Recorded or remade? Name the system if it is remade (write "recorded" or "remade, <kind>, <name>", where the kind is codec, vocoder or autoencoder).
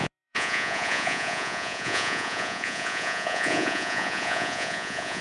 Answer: remade, vocoder, Vocos